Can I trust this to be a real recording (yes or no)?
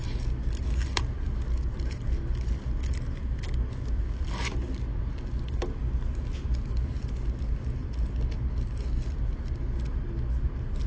yes